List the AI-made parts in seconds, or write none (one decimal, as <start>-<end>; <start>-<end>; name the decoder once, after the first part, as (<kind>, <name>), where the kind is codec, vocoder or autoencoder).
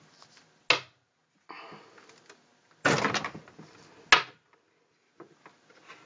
none